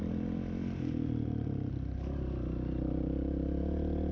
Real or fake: real